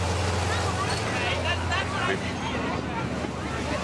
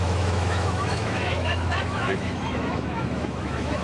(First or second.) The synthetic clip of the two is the second